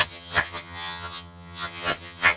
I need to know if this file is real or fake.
fake